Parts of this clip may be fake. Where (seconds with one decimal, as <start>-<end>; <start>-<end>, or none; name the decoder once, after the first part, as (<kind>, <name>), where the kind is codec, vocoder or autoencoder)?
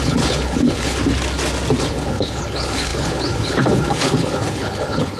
0.0-1.0 (codec, HILCodec); 1.8-5.2